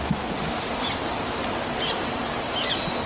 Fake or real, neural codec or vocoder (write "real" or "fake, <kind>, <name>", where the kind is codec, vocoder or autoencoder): real